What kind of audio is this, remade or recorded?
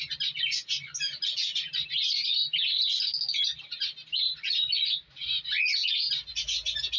recorded